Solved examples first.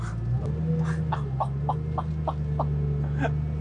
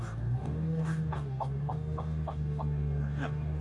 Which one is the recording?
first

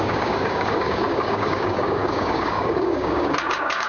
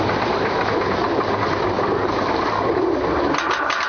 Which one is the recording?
second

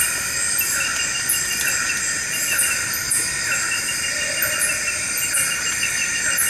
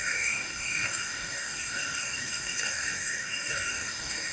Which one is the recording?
first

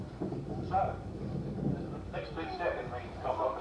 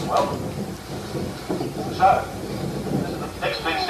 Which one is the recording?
second